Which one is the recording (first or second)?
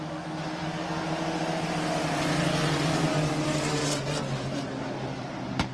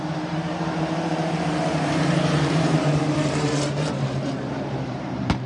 first